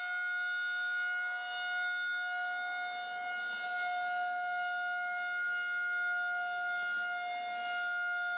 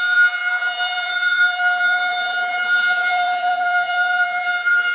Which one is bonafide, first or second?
first